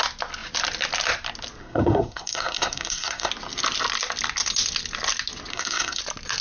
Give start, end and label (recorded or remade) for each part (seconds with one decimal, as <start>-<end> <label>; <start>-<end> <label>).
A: 0.0-1.6 recorded; 1.6-3.3 remade; 3.3-5.5 recorded; 5.5-6.0 remade; 6.0-6.4 recorded